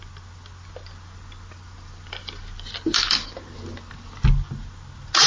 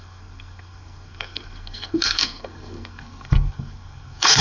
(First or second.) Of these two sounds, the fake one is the second